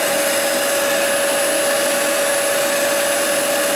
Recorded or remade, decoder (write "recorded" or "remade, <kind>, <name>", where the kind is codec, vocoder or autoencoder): recorded